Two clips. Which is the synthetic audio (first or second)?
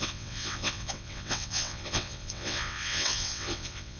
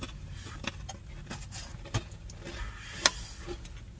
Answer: first